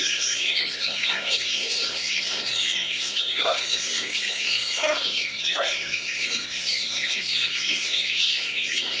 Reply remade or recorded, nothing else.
remade